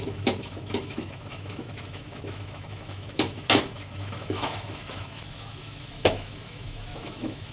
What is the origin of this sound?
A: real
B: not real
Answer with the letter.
B